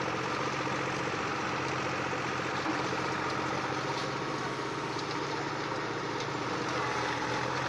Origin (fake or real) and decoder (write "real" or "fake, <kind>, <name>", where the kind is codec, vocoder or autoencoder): real